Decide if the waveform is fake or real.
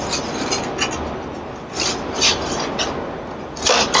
real